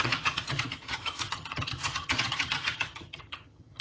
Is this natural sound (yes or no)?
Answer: no